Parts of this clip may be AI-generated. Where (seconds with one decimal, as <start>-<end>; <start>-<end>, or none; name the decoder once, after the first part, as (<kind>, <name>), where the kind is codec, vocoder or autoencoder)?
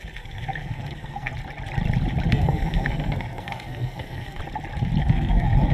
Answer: 0.0-1.3 (codec, SNAC); 2.3-4.4; 5.0-5.7